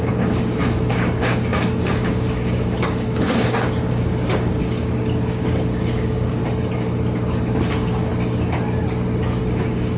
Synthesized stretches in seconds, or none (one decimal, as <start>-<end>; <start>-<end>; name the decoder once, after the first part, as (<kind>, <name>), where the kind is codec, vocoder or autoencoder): 0.0-6.4 (codec, DAC); 7.7-8.1; 9.4-10.0